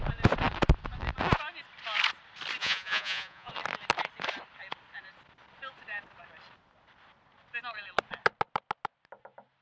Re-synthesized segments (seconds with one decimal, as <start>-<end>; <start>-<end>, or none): 2.6-3.5